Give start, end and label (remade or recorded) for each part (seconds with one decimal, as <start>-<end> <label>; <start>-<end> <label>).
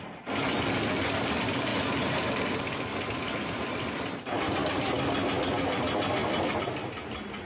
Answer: 0.0-1.7 recorded; 1.7-2.4 remade; 2.4-2.9 recorded; 2.9-6.6 remade; 6.6-7.5 recorded